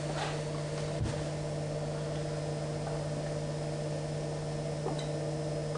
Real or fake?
real